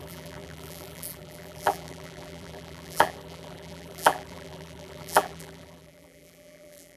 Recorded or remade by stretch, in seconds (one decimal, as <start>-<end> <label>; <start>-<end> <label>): 0.0-7.0 remade